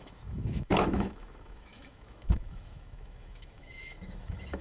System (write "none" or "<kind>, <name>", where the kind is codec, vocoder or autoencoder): autoencoder, DAC-VAE